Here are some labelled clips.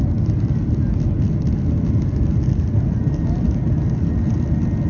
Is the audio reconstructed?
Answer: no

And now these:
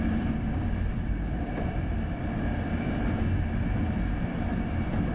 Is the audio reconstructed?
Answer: no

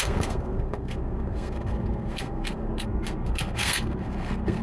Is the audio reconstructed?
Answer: yes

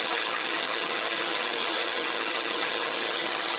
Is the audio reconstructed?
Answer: yes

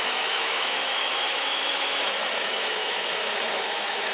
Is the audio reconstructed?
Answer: yes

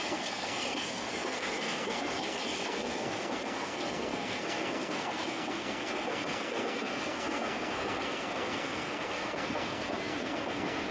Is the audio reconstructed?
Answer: yes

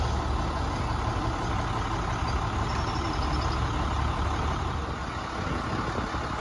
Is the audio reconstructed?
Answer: no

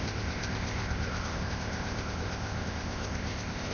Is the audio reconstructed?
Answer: yes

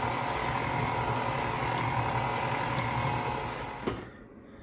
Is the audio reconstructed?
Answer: no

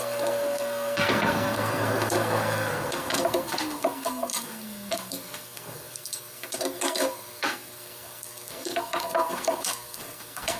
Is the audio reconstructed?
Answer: yes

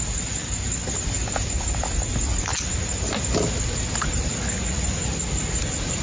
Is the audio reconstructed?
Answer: no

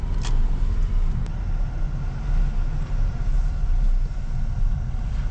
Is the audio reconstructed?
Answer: no